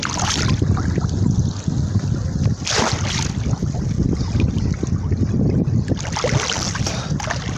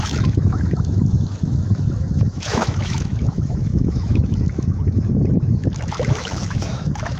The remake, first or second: second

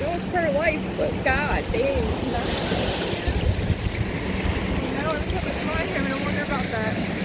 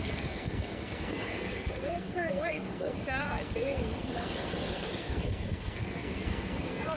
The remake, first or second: second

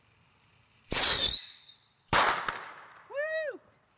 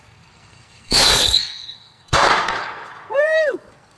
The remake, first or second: second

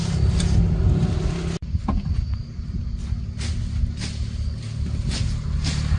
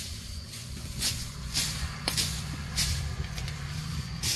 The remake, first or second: second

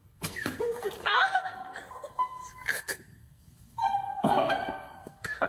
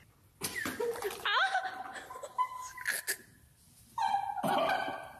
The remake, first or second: first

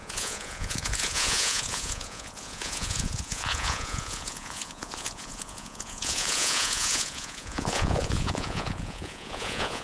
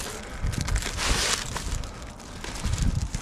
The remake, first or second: first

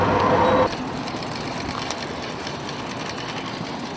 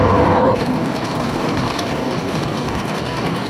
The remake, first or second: second